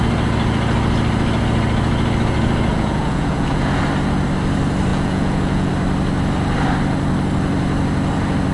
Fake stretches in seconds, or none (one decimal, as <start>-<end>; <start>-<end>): 2.7-3.8; 4.9-5.7